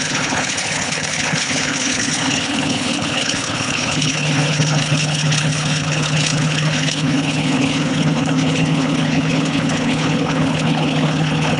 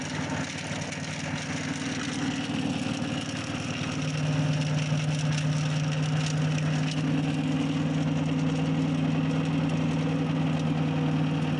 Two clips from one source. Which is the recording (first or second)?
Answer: second